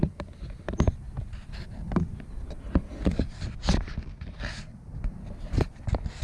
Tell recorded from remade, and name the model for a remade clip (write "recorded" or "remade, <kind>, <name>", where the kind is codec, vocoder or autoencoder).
recorded